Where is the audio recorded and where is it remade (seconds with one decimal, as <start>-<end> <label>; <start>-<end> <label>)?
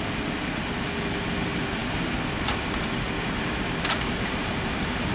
0.0-4.4 recorded; 4.4-5.1 remade